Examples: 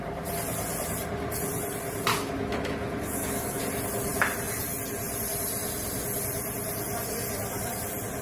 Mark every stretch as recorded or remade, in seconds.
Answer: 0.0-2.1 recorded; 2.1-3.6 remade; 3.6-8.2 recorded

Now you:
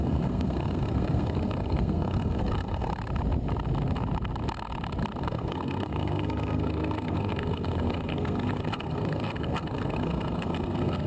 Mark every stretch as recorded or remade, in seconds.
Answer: 0.0-2.9 remade; 2.9-5.2 recorded; 5.2-11.1 remade

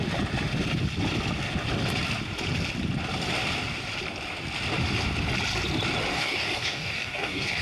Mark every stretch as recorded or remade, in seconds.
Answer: 0.0-6.1 recorded; 6.1-7.6 remade

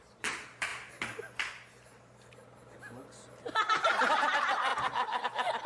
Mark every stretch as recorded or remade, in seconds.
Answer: 0.0-0.7 remade; 0.7-4.1 recorded; 4.1-4.7 remade; 4.7-5.2 recorded; 5.2-5.7 remade

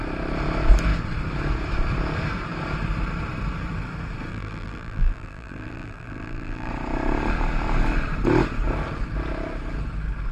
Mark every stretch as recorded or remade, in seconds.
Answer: 0.0-4.3 recorded; 4.3-6.7 remade; 6.7-10.3 recorded